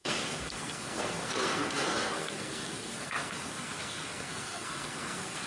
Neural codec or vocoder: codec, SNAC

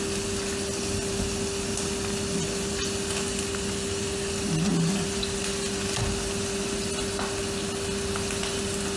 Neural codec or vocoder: none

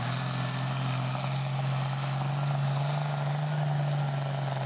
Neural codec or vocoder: none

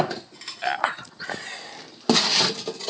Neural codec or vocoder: none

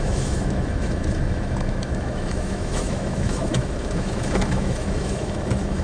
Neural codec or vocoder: autoencoder, DAC-VAE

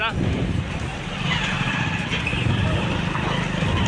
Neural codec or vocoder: none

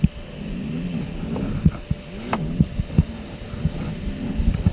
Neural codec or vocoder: none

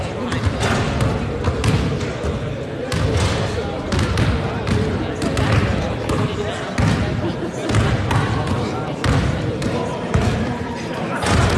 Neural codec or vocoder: none